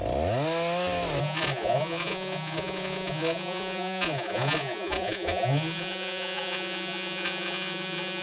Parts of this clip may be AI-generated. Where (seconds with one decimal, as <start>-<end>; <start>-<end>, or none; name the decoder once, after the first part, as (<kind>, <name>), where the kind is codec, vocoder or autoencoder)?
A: 1.2-8.2 (vocoder, Vocos)